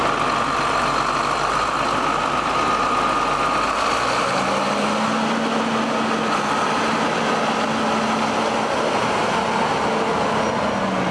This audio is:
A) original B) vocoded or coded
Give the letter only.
A